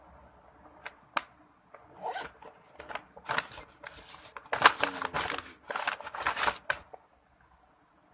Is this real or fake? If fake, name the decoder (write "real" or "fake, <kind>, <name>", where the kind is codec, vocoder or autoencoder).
real